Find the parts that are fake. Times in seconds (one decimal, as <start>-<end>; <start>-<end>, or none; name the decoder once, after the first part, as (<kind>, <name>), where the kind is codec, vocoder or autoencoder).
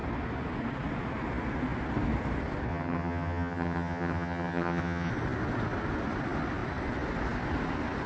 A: 2.7-5.1 (vocoder, HiFi-GAN)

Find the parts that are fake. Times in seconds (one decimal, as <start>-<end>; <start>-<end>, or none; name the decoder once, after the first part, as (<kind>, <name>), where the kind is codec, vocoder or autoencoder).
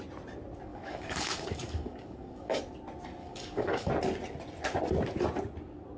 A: 0.7-2.6 (codec, DAC); 3.2-3.9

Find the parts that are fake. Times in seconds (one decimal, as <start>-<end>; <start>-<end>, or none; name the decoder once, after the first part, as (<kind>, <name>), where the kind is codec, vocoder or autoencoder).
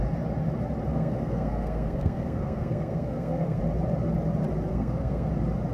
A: 0.9-3.6 (codec, SNAC); 4.7-5.3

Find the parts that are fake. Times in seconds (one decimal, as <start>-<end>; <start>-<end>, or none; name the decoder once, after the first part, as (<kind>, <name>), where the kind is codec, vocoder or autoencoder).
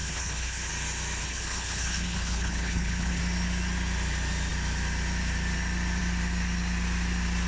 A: 0.0-0.7 (codec, HILCodec); 1.2-3.2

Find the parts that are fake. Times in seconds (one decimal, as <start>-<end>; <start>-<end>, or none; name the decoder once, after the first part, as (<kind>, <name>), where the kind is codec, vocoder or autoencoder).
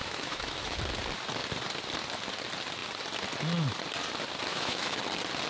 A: 0.0-0.8 (autoencoder, DAC-VAE); 4.5-5.0